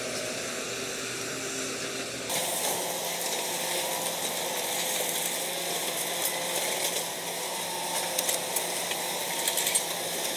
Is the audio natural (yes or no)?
yes